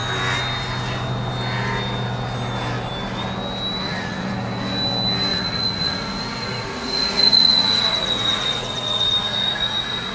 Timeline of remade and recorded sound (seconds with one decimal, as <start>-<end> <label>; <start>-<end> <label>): 0.0-3.8 recorded; 3.8-4.3 remade; 4.3-5.3 recorded; 5.3-10.1 remade